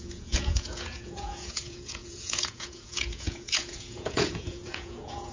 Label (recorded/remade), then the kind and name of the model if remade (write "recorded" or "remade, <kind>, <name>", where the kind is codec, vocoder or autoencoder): remade, vocoder, Vocos